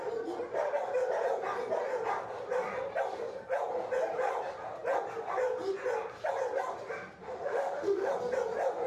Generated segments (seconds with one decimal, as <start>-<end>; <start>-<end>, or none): 7.2-8.1